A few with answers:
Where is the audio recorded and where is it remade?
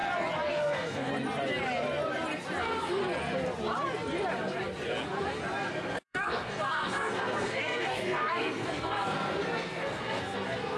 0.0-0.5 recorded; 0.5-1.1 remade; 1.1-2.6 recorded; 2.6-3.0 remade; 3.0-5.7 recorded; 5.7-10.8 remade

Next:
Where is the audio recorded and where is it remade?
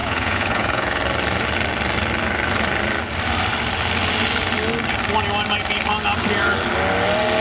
0.0-1.0 remade; 1.0-7.4 recorded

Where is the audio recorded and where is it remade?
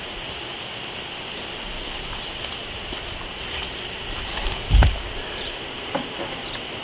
0.0-6.8 recorded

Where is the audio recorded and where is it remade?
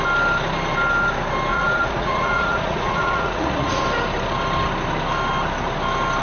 0.0-1.5 recorded; 1.5-3.8 remade; 3.8-6.2 recorded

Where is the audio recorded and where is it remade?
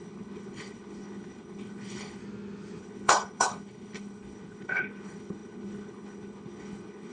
0.0-2.2 remade; 2.2-2.8 recorded; 2.8-7.1 remade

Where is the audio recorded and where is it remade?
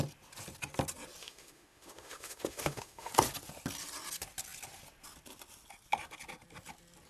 0.0-1.2 recorded; 1.2-3.1 remade; 3.1-7.1 recorded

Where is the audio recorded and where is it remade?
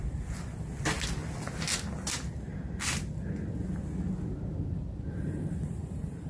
0.0-5.6 recorded; 5.6-6.3 remade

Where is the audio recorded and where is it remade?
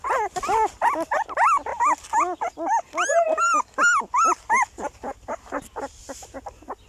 0.0-6.9 recorded